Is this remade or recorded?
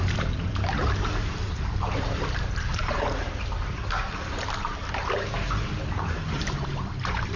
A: remade